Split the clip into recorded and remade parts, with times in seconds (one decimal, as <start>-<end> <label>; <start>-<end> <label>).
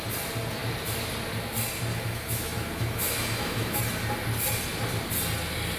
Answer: 0.0-1.9 recorded; 1.9-3.8 remade; 3.8-5.8 recorded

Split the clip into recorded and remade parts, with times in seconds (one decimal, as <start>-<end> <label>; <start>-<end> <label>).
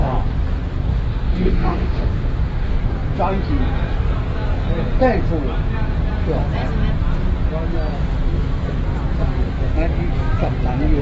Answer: 0.0-0.9 recorded; 0.9-2.8 remade; 2.8-11.0 recorded